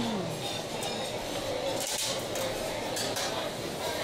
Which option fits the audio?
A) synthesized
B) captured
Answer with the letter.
B